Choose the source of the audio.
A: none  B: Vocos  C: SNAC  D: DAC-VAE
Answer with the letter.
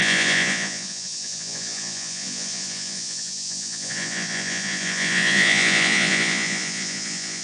B